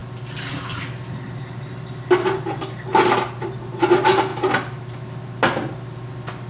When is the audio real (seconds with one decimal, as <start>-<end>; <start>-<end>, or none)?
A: 0.0-6.5